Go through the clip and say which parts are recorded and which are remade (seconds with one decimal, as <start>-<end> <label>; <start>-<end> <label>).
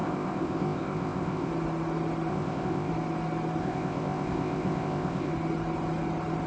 0.0-1.5 remade; 1.5-2.3 recorded; 2.3-2.9 remade; 2.9-3.6 recorded; 3.6-5.3 remade; 5.3-6.5 recorded